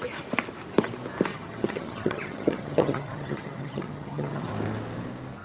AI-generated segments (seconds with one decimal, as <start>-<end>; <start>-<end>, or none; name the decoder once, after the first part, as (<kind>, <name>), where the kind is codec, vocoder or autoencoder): 1.3-4.5 (vocoder, HiFi-GAN)